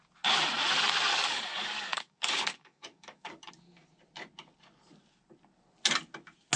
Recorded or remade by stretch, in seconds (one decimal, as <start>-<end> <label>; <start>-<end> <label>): 0.0-1.1 recorded; 1.1-3.5 remade; 3.5-6.6 recorded